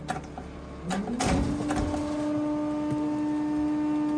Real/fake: real